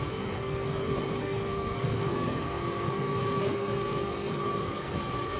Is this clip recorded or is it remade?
remade